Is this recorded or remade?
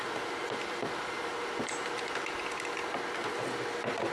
recorded